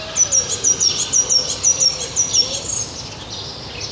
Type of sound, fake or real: real